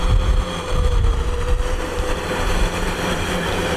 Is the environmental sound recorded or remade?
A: remade